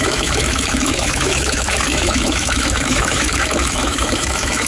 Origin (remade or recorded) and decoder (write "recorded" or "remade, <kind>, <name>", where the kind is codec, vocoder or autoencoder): remade, autoencoder, DAC-VAE